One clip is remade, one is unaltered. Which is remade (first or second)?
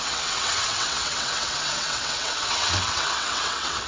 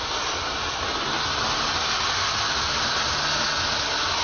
first